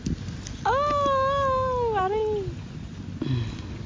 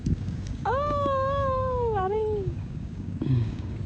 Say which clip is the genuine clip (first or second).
first